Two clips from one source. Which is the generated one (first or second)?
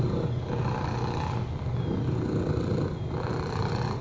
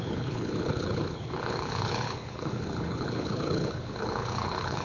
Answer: second